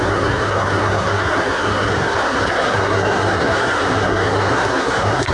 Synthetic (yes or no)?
yes